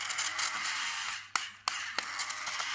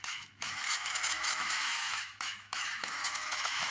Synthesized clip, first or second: second